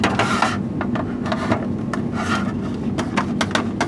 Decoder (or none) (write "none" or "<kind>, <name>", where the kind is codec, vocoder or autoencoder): none